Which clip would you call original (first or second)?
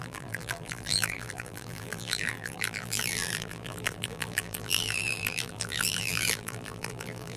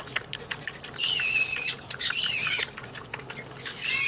second